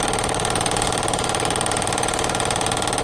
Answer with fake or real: real